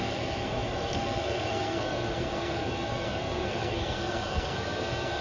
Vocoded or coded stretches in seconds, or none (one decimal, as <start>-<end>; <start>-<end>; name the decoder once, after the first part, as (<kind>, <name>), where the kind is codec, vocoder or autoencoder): 0.0-5.2 (codec, SNAC)